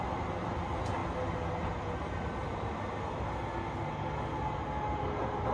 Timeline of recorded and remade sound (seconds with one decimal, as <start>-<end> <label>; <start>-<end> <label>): 0.0-5.5 recorded